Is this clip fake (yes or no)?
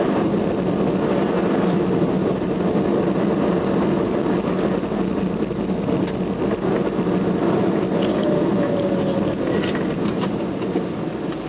no